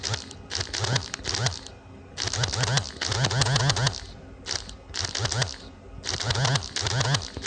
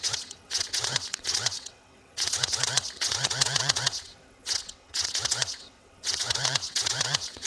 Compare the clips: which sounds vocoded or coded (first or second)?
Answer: second